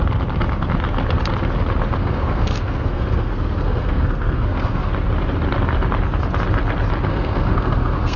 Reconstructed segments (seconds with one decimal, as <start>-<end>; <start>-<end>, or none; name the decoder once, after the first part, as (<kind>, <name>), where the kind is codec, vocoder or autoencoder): 2.0-4.9 (codec, SNAC); 7.1-8.2